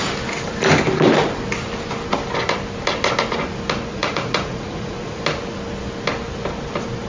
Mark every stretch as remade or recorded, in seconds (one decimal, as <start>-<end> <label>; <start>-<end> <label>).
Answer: 0.0-3.9 recorded; 3.9-5.2 remade; 5.2-7.1 recorded